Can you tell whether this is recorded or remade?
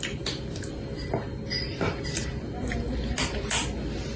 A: recorded